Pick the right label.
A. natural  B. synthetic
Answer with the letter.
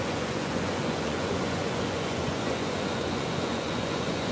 B